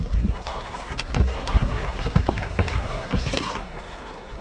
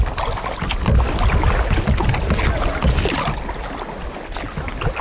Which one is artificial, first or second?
first